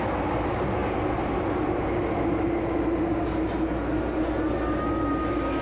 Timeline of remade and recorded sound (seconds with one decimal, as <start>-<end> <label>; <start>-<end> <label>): 0.0-5.6 recorded